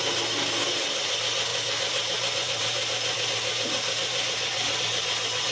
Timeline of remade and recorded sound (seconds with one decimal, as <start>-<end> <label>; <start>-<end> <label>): 0.0-1.5 recorded; 1.5-4.8 remade; 4.8-5.5 recorded